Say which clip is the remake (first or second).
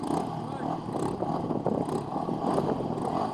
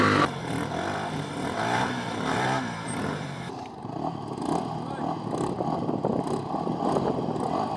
second